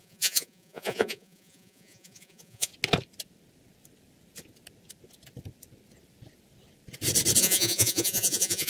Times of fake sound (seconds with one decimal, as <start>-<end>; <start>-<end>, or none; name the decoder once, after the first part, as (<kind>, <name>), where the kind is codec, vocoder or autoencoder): 0.0-2.7 (vocoder, Vocos); 7.4-8.7